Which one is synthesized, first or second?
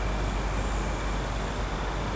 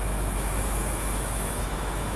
second